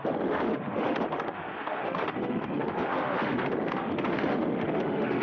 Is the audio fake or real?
fake